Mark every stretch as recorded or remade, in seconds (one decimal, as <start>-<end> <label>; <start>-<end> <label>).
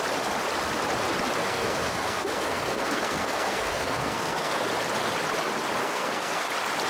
0.0-1.4 recorded; 1.4-4.6 remade; 4.6-5.8 recorded; 5.8-6.5 remade; 6.5-6.9 recorded